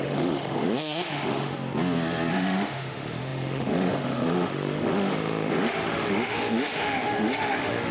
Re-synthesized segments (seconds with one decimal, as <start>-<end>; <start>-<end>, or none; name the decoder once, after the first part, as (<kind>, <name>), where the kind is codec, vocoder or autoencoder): 0.0-1.5 (autoencoder, DAC-VAE); 2.3-7.9